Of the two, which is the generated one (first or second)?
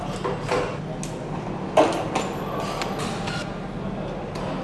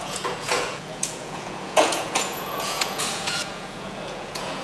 second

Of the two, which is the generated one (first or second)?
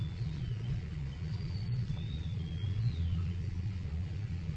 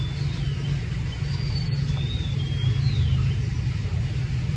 first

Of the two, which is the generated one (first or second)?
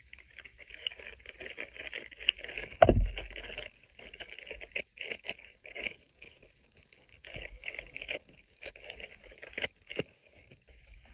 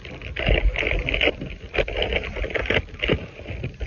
first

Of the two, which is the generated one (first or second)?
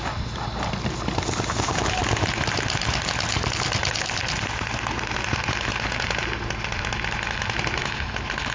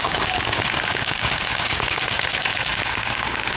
second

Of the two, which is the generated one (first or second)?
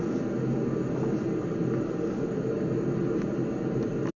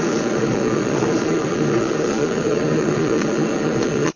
second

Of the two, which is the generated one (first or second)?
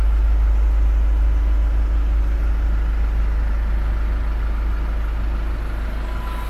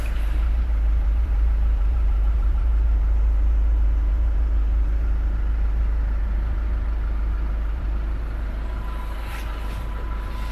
second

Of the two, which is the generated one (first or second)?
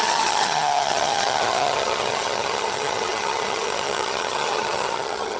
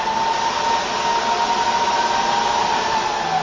first